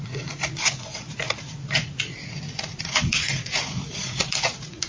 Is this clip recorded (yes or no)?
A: no